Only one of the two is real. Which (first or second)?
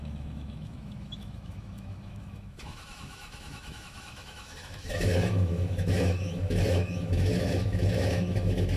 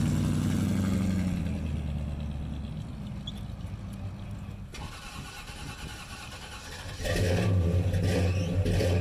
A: second